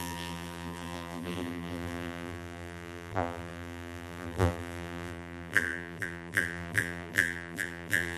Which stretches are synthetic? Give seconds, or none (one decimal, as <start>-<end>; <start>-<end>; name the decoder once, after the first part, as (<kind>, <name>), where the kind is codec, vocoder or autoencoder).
0.0-8.2 (vocoder, BigVGAN v2)